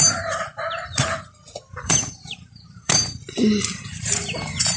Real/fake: fake